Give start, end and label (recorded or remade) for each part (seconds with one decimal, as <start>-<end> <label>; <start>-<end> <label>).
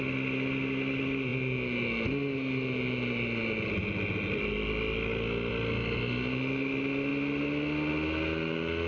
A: 0.0-8.9 recorded